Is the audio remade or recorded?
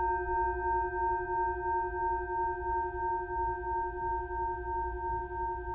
recorded